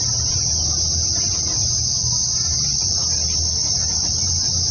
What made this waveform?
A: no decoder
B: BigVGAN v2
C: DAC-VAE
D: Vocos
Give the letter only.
A